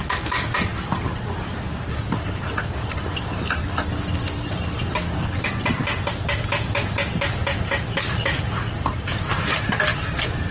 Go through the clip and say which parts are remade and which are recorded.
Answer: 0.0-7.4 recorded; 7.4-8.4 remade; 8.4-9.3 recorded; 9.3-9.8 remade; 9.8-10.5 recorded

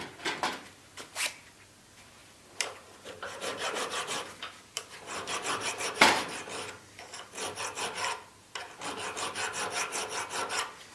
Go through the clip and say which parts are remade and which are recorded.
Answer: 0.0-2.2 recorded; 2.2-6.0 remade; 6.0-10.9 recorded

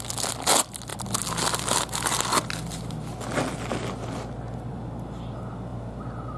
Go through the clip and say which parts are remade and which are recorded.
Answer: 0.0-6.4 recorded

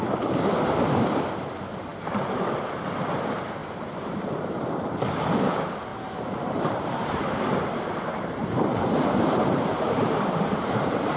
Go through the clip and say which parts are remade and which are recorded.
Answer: 0.0-3.6 recorded; 3.6-4.3 remade; 4.3-5.9 recorded; 5.9-11.2 remade

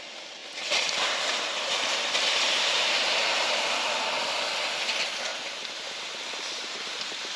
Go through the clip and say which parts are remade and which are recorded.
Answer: 0.0-0.4 recorded; 0.4-3.8 remade; 3.8-5.3 recorded; 5.3-7.4 remade

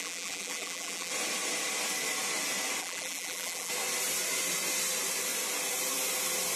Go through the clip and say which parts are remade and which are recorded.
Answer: 0.0-1.1 remade; 1.1-2.8 recorded; 2.8-3.7 remade; 3.7-6.6 recorded